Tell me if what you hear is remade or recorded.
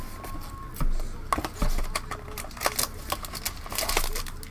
recorded